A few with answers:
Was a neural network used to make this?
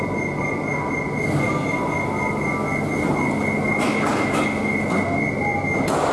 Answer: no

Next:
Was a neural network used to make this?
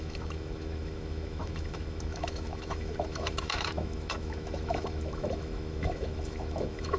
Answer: yes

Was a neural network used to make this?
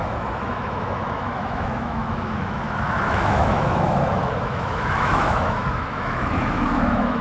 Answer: yes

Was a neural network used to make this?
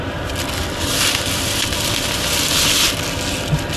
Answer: no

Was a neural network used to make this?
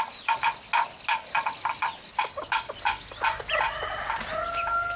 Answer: no